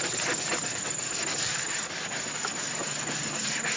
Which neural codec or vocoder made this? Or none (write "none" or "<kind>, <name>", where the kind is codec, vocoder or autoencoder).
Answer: vocoder, BigVGAN v2